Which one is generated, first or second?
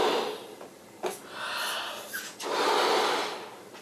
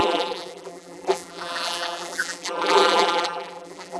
second